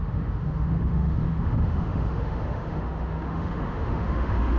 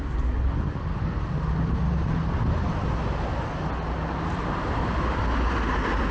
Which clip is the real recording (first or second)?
second